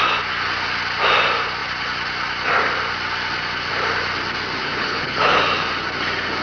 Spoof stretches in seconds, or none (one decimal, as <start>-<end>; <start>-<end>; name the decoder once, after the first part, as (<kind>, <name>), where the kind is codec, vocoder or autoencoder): 4.6-5.4 (codec, HILCodec)